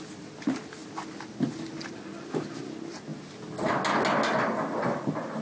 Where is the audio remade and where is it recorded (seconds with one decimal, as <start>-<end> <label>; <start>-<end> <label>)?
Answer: 0.0-5.4 recorded